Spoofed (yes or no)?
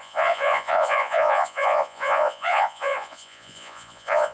yes